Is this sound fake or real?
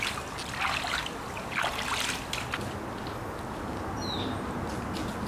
real